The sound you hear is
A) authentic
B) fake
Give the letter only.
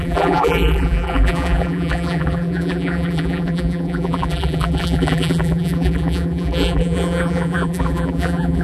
B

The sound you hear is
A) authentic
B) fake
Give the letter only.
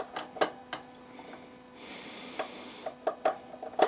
A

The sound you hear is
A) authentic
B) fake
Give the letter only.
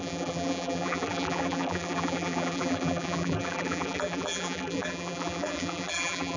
B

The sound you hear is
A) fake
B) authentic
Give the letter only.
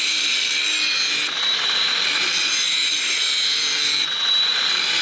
A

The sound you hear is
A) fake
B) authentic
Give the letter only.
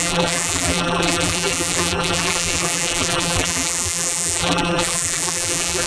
A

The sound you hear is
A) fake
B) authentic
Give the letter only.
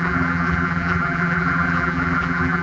A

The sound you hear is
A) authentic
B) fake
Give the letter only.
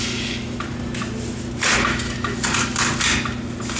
A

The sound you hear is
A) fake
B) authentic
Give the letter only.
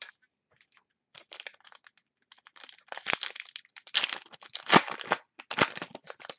B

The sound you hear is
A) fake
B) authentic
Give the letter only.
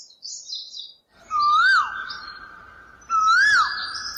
B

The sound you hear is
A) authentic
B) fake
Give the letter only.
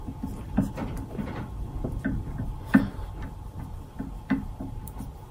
A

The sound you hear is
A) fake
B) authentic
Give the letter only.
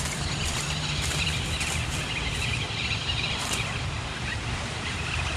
A